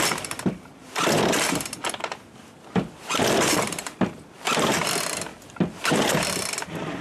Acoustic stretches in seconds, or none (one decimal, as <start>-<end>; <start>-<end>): 5.3-5.9